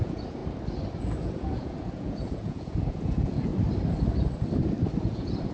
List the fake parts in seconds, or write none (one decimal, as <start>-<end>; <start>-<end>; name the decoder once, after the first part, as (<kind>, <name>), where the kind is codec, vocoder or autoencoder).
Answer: 0.0-0.4 (vocoder, Vocos); 1.0-3.5; 5.0-5.5